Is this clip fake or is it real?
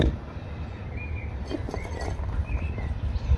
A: real